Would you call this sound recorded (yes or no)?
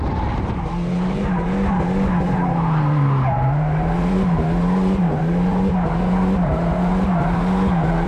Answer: no